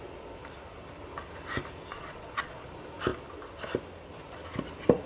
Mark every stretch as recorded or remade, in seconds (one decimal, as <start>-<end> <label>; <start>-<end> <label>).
0.0-1.9 recorded; 1.9-2.7 remade; 2.7-5.1 recorded